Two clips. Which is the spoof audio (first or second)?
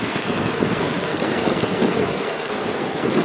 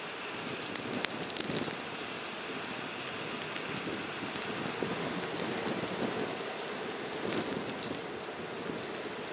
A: first